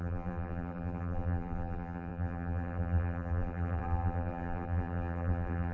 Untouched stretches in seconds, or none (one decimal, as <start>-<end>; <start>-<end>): none

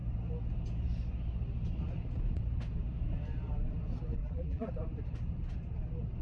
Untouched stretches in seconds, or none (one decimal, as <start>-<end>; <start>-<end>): 0.0-4.2; 4.7-6.2

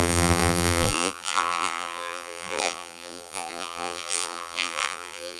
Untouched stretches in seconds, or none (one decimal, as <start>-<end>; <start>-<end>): none

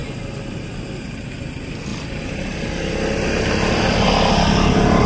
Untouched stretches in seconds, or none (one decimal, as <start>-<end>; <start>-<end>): 0.0-1.9

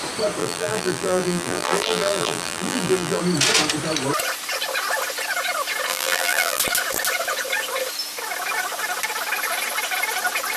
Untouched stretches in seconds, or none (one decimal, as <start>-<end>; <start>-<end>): 0.0-0.4; 3.2-5.9; 6.6-10.6

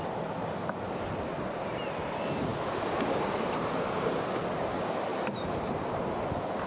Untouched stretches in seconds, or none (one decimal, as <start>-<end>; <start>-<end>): 0.0-5.1; 6.0-6.7

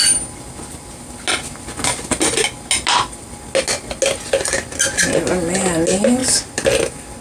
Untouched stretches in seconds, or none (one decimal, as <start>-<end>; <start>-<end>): 0.0-7.2

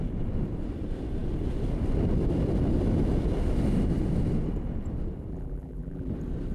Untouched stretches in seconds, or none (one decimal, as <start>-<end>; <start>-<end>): 0.0-5.3; 6.1-6.5